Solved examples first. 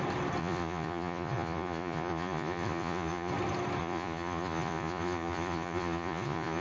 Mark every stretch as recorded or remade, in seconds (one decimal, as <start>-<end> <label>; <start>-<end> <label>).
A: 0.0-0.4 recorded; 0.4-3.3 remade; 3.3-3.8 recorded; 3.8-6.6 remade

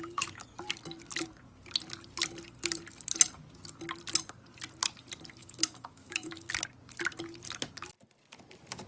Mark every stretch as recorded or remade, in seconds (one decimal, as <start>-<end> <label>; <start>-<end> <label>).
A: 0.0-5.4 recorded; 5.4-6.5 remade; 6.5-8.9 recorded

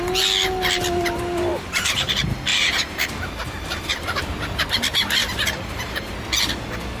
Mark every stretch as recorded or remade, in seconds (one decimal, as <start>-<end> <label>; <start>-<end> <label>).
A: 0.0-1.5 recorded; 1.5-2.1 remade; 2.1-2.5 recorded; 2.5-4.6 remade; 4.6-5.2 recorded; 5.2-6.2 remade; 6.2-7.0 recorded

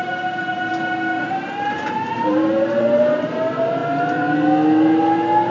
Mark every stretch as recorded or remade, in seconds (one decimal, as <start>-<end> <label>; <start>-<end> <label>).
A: 0.0-0.7 remade; 0.7-1.9 recorded; 1.9-3.8 remade; 3.8-5.5 recorded

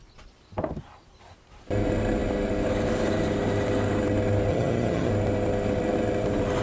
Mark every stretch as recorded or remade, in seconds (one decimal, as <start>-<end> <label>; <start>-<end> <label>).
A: 0.0-4.5 recorded; 4.5-5.1 remade; 5.1-6.6 recorded

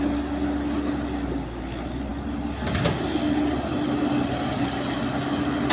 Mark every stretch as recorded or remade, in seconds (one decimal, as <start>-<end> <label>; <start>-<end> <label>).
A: 0.0-5.7 recorded